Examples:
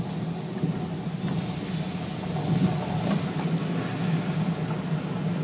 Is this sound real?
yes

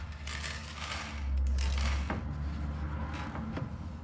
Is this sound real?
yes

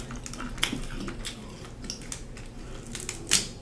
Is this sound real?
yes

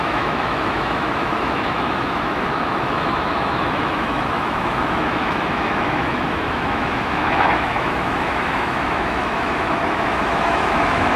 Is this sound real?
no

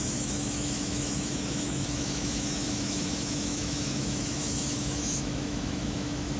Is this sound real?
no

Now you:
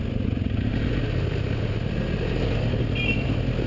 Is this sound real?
yes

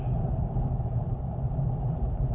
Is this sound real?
yes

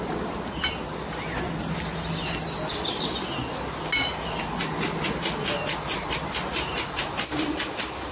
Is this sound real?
yes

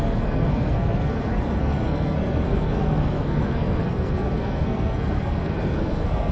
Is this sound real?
no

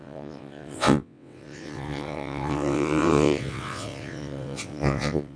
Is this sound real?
no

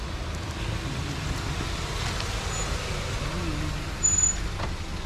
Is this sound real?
yes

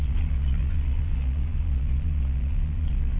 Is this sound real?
no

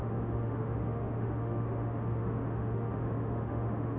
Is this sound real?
no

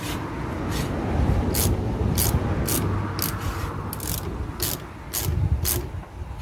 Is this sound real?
yes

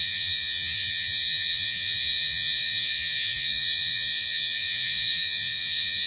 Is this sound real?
no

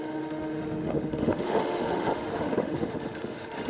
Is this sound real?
no